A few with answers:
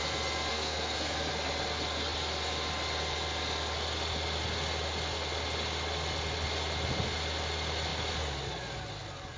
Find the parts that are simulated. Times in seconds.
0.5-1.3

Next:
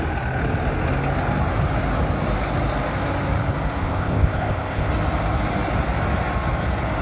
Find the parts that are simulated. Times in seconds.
3.8-4.9

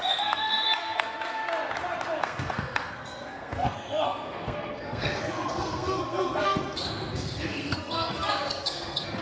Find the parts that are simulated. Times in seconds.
0.0-1.4; 2.2-9.2

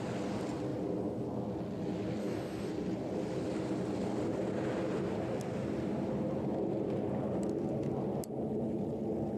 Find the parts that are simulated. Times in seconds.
2.2-2.7

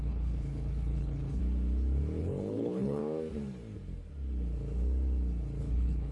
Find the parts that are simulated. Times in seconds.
0.0-1.4; 2.2-3.0; 5.6-6.1

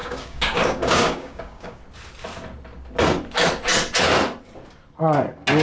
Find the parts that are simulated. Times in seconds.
0.0-1.8

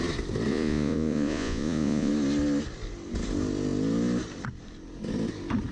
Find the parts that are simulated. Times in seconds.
0.5-2.1